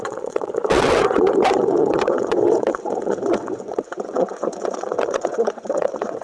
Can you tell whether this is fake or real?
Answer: fake